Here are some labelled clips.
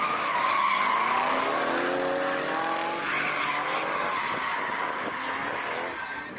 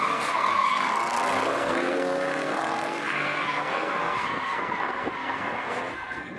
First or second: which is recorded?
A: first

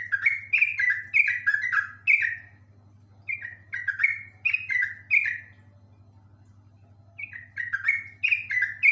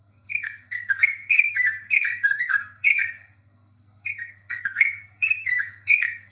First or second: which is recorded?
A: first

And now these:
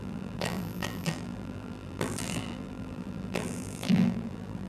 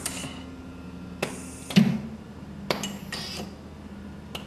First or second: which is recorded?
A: second